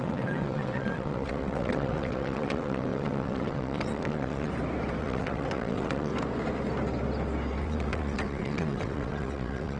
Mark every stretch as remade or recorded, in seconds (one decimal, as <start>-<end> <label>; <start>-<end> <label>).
0.0-4.5 remade; 4.5-5.0 recorded; 5.0-6.1 remade; 6.1-7.6 recorded; 7.6-9.8 remade